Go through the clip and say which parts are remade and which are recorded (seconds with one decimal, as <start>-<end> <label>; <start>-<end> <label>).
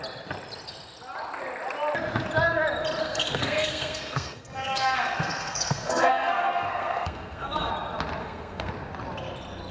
0.0-3.0 recorded; 3.0-7.7 remade; 7.7-8.2 recorded; 8.2-8.7 remade; 8.7-9.7 recorded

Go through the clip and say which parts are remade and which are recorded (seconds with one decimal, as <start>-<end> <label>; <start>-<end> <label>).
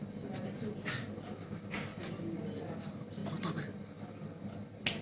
0.0-1.9 remade; 1.9-2.8 recorded; 2.8-3.2 remade; 3.2-5.0 recorded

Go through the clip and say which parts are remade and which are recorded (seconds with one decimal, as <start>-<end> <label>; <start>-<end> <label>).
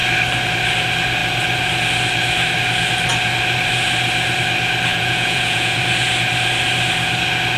0.0-4.9 recorded; 4.9-5.8 remade; 5.8-7.6 recorded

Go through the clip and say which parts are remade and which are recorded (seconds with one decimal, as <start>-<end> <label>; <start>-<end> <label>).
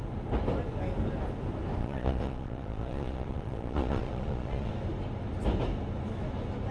0.0-1.8 recorded; 1.8-4.7 remade; 4.7-6.7 recorded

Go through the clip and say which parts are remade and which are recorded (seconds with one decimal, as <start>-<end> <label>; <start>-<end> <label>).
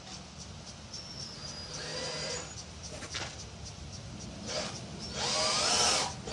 0.0-6.3 recorded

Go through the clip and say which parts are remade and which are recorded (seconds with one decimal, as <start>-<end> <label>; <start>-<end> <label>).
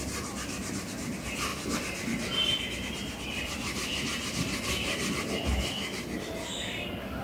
0.0-7.2 recorded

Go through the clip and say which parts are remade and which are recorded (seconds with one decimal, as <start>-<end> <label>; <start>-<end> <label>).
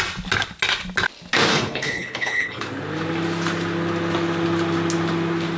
0.0-1.5 recorded; 1.5-2.7 remade; 2.7-5.6 recorded